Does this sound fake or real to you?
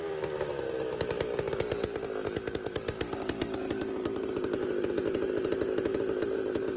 real